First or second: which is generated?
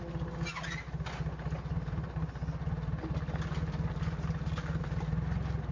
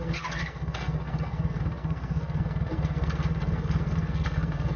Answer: second